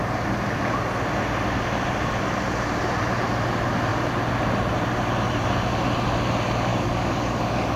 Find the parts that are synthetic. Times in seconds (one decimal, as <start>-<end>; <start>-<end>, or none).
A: 6.7-7.8